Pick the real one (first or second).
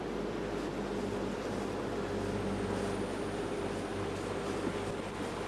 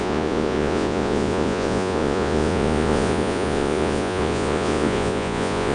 first